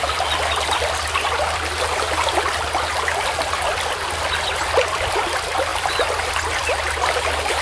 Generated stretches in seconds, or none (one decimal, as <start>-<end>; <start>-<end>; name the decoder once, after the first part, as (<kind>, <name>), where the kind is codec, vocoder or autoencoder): none